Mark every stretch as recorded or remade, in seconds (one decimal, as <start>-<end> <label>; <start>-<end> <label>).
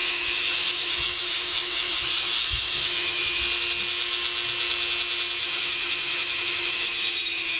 0.0-3.4 remade; 3.4-5.4 recorded; 5.4-7.6 remade